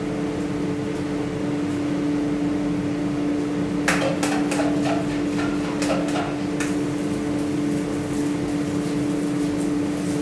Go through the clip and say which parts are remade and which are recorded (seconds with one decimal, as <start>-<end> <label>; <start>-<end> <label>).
0.0-10.2 recorded

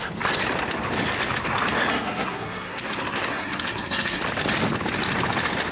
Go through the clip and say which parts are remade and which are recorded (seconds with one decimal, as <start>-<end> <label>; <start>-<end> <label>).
0.0-1.9 recorded; 1.9-4.2 remade; 4.2-5.7 recorded

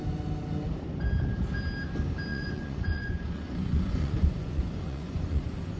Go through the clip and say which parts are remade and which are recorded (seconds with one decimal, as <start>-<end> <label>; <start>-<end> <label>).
0.0-2.3 recorded; 2.3-5.8 remade

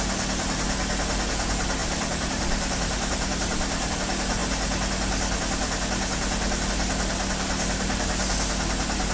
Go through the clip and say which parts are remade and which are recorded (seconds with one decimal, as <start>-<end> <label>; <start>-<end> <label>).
0.0-1.8 recorded; 1.8-4.0 remade; 4.0-9.1 recorded

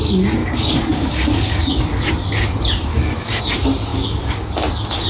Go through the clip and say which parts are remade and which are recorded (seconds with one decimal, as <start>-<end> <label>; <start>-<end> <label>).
0.0-0.4 recorded; 0.4-1.8 remade; 1.8-2.9 recorded; 2.9-3.4 remade; 3.4-3.9 recorded; 3.9-4.5 remade; 4.5-5.1 recorded